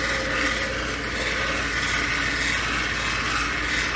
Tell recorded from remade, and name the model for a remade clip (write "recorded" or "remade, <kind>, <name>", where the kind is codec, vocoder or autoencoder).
recorded